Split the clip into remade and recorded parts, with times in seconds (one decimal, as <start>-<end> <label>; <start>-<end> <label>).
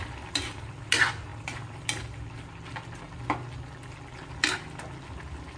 0.0-5.6 recorded